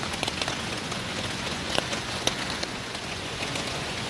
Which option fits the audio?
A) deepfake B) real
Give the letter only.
A